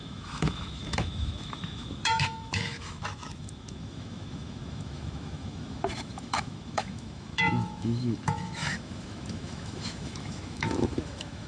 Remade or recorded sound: remade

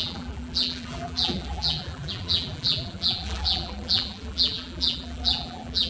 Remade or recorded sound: remade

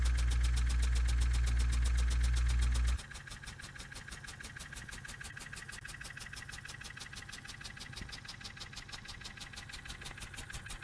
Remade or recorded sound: recorded